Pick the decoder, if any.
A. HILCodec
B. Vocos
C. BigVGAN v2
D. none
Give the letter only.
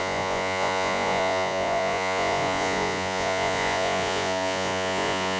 B